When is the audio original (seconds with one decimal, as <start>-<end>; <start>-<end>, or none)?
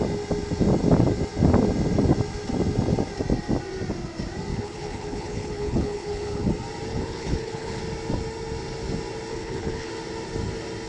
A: 0.0-4.5; 6.5-6.9; 7.8-9.3; 9.9-10.9